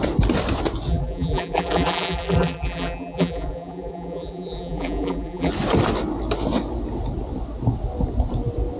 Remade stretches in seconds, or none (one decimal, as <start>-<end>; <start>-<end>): 0.9-5.5